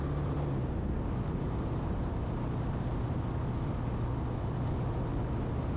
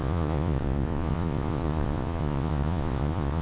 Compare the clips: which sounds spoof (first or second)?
second